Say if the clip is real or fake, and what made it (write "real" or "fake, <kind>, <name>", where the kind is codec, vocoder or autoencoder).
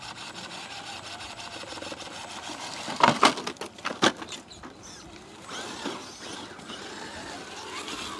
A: real